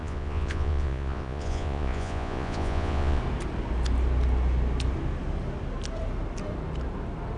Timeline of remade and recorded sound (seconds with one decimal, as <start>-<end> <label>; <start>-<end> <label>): 0.0-3.2 remade; 3.2-7.4 recorded